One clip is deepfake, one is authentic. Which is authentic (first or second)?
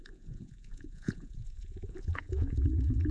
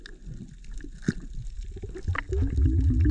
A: second